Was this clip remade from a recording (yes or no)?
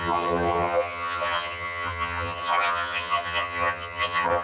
yes